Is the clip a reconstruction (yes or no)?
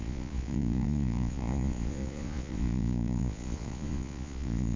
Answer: yes